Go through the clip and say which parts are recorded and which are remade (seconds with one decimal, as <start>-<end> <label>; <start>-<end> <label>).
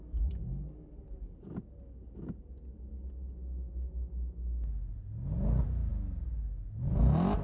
0.0-7.4 recorded